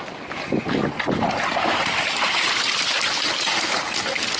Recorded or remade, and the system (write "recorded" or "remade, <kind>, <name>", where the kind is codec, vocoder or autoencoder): recorded